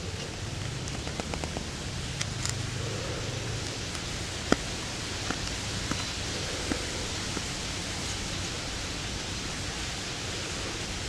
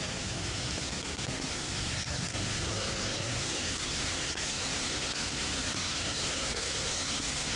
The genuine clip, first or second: first